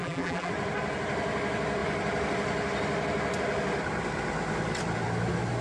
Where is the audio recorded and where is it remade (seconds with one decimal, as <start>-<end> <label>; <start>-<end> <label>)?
0.0-0.5 remade; 0.5-5.6 recorded